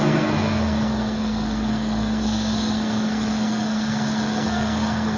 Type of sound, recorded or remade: remade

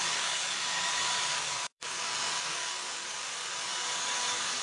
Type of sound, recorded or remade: remade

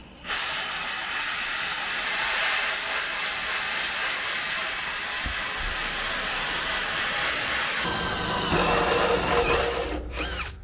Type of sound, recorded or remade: recorded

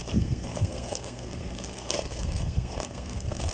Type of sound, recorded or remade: remade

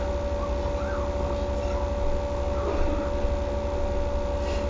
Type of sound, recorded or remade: recorded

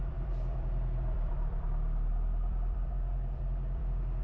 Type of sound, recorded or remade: remade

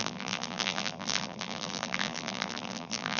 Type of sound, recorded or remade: remade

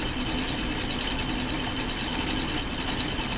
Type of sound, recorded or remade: recorded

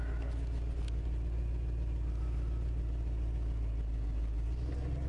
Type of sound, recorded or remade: recorded